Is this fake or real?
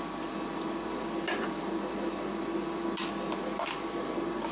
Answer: real